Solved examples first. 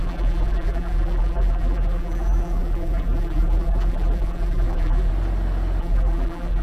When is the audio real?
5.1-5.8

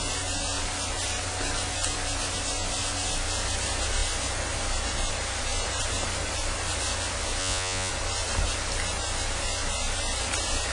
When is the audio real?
0.0-7.4; 7.9-10.7

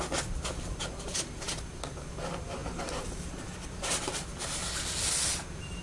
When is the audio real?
0.0-5.8

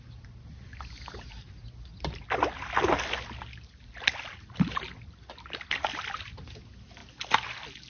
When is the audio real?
0.0-7.9

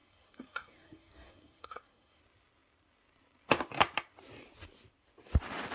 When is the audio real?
2.2-5.7